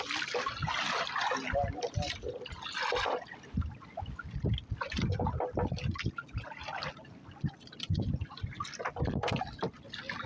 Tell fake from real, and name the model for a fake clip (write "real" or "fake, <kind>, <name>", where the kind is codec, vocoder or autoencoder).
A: real